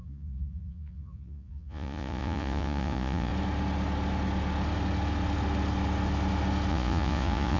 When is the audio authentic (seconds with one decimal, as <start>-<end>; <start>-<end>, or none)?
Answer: 3.3-6.7